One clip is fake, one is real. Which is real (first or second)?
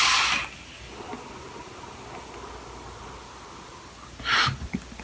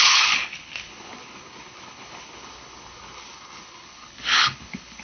first